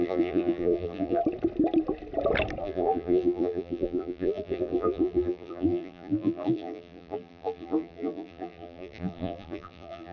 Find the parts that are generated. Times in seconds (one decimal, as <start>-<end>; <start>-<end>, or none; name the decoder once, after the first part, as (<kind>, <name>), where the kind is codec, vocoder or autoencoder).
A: 0.0-1.2 (vocoder, BigVGAN v2); 2.6-10.1